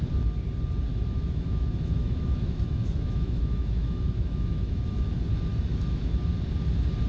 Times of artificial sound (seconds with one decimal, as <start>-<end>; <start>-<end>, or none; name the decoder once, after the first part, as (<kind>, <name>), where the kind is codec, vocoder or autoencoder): 0.9-5.1 (autoencoder, DAC-VAE); 5.5-6.2